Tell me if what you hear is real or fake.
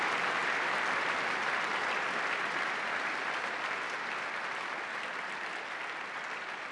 real